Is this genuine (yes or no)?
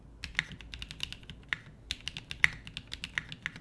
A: yes